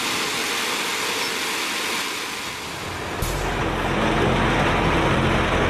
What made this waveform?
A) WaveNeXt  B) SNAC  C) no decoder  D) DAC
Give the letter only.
C